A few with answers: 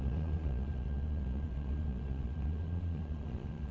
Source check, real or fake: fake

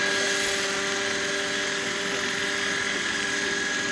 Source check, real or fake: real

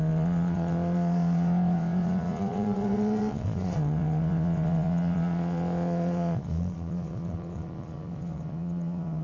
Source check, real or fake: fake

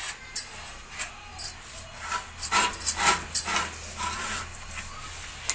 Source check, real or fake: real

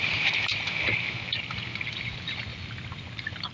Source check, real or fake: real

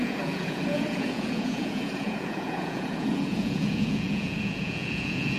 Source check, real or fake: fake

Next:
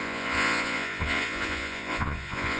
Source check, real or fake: fake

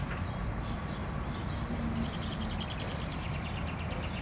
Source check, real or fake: real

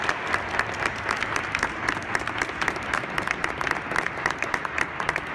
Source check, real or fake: real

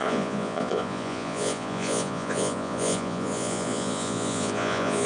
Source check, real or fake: fake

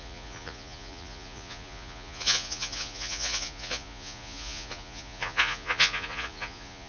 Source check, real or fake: fake